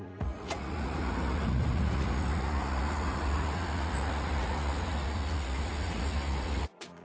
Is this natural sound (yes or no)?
no